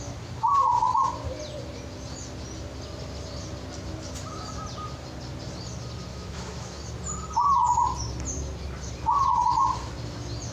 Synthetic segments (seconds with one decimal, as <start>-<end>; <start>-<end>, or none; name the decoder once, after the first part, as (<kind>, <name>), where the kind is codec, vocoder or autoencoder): 6.1-6.9 (autoencoder, DAC-VAE)